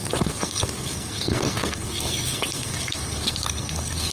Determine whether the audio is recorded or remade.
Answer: remade